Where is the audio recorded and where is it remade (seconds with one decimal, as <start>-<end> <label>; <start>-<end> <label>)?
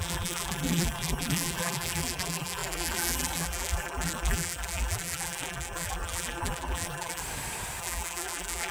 0.0-7.2 remade; 7.2-7.8 recorded; 7.8-8.7 remade